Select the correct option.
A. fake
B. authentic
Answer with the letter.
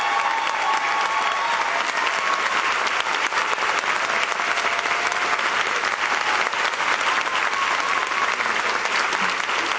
B